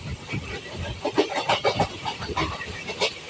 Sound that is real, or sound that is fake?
real